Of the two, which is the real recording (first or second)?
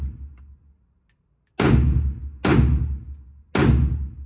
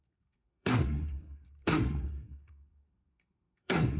first